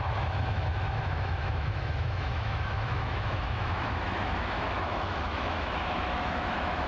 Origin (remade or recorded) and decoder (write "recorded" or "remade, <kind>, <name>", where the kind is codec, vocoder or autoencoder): remade, autoencoder, DAC-VAE